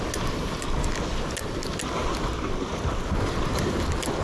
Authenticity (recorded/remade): recorded